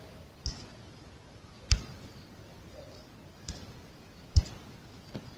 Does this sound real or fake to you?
real